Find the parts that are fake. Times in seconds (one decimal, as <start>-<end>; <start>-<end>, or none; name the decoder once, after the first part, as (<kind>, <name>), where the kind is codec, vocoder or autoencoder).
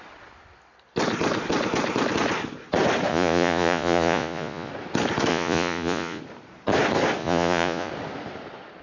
3.1-4.7 (vocoder, Vocos); 5.3-6.2; 7.2-7.9